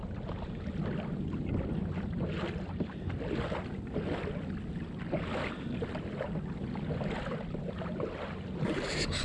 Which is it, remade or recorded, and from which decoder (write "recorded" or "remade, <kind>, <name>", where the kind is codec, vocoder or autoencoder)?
recorded